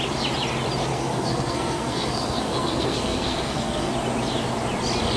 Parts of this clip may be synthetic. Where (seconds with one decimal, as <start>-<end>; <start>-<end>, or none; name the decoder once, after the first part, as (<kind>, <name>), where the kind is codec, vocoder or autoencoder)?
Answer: 0.8-3.9 (codec, SNAC)